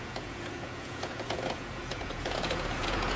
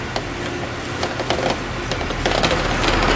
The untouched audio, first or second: second